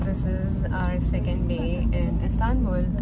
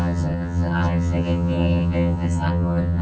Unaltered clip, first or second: first